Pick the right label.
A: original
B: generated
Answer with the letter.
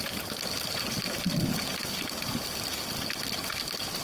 A